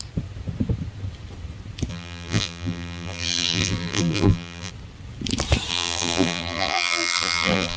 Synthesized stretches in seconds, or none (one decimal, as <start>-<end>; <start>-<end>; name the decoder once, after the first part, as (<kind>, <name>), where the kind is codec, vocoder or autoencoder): 1.9-4.7 (vocoder, BigVGAN v2); 5.7-7.8